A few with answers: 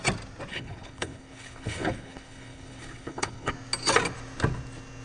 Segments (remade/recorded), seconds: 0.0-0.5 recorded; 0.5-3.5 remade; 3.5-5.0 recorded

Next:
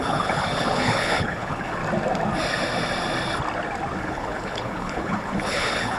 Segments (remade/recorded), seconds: 0.0-1.8 remade; 1.8-4.0 recorded; 4.0-6.0 remade